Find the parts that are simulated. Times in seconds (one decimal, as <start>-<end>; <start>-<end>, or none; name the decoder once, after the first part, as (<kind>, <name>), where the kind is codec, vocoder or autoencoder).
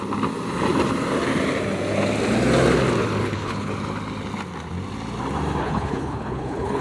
3.2-3.7 (codec, HILCodec); 5.6-6.8